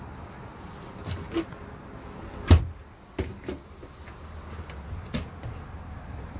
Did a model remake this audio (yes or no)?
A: no